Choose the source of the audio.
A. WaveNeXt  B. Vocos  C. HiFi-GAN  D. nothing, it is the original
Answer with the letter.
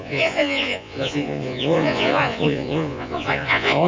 B